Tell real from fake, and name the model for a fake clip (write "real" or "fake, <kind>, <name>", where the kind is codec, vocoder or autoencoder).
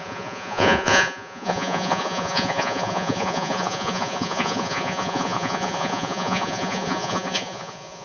fake, vocoder, Vocos